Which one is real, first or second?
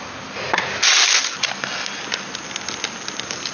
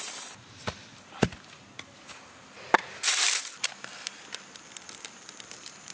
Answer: first